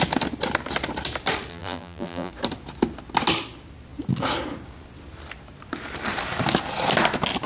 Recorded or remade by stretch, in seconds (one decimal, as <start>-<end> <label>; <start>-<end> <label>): 0.0-1.5 recorded; 1.5-2.3 remade; 2.3-7.5 recorded